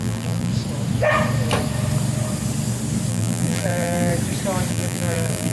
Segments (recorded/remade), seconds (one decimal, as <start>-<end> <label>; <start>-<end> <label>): 0.0-0.5 remade; 0.5-3.1 recorded; 3.1-4.1 remade; 4.1-4.7 recorded; 4.7-5.5 remade